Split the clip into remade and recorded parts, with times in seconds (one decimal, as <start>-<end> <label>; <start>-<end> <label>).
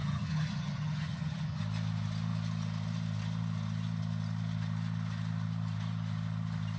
0.0-1.6 remade; 1.6-6.8 recorded